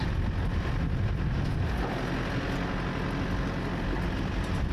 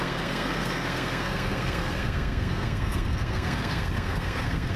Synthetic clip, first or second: second